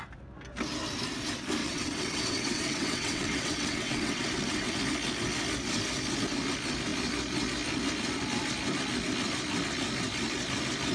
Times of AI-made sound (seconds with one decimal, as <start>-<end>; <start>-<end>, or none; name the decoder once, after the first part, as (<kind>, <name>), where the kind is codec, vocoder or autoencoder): 1.6-4.7 (vocoder, WaveNeXt)